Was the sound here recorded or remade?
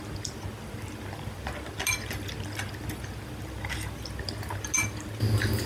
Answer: recorded